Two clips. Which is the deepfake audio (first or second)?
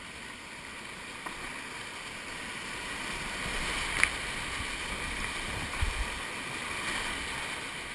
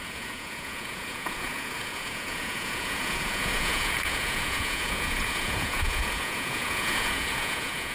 second